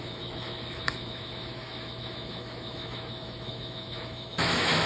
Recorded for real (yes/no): no